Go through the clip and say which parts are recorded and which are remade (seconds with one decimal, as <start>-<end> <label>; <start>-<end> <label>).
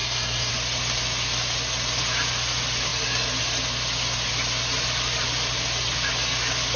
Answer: 0.0-0.5 remade; 0.5-6.8 recorded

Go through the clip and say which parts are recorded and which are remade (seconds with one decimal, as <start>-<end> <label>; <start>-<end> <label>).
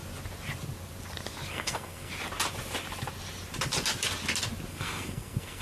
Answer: 0.0-1.5 recorded; 1.5-2.1 remade; 2.1-4.7 recorded; 4.7-5.6 remade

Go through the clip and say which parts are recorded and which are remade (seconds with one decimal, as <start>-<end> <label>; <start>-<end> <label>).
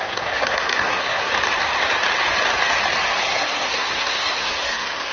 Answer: 0.0-1.3 remade; 1.3-3.2 recorded; 3.2-5.1 remade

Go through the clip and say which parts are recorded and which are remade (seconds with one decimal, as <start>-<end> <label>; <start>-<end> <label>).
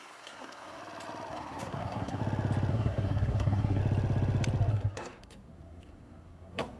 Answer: 0.0-0.8 remade; 0.8-1.3 recorded; 1.3-2.2 remade; 2.2-2.7 recorded; 2.7-3.8 remade; 3.8-4.7 recorded; 4.7-6.8 remade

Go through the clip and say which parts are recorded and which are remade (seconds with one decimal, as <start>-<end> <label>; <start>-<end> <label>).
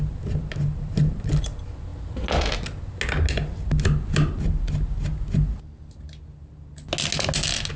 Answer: 0.0-7.8 recorded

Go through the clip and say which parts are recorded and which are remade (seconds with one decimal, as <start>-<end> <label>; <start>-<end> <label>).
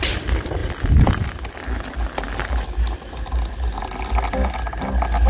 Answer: 0.0-5.3 recorded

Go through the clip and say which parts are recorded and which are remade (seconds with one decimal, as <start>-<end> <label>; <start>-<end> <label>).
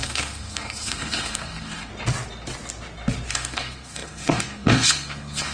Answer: 0.0-1.9 remade; 1.9-3.3 recorded; 3.3-5.5 remade